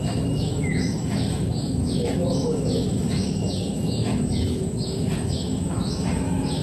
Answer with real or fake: fake